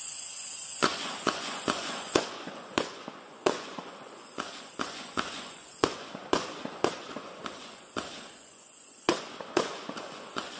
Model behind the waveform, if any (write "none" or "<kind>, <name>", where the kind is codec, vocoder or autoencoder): vocoder, Vocos